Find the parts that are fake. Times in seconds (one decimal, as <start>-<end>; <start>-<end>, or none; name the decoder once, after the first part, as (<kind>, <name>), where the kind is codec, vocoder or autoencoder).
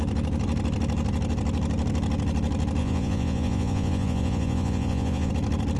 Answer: 2.8-5.3 (vocoder, Vocos)